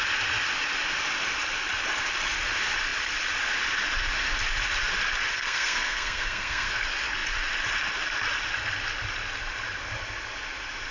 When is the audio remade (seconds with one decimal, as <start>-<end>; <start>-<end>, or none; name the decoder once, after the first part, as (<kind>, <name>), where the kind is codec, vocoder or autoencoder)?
5.3-6.7 (codec, SNAC)